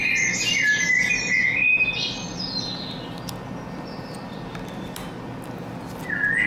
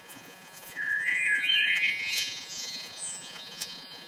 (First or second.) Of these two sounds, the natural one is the first